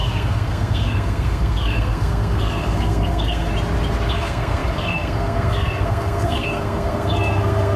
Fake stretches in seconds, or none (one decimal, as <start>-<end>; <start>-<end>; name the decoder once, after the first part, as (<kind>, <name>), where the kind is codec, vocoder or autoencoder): 0.0-3.5 (codec, SNAC); 4.1-7.8